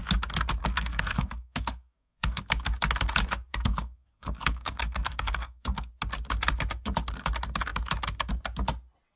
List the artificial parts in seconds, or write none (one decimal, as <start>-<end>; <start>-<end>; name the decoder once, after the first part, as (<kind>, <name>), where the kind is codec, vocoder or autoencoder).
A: 0.6-2.4 (codec, SNAC); 3.5-5.9